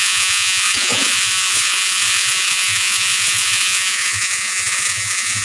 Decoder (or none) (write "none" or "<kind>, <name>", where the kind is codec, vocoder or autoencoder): vocoder, Vocos